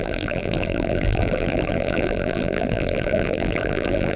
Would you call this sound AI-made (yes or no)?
yes